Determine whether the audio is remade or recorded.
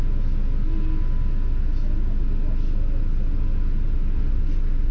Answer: recorded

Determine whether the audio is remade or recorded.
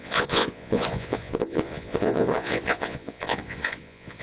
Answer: remade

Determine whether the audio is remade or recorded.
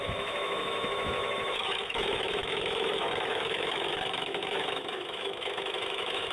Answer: remade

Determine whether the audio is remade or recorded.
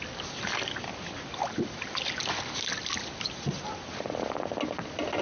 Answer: recorded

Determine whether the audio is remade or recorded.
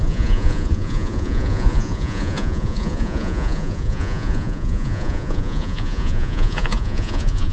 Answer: remade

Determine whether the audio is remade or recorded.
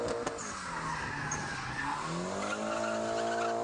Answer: recorded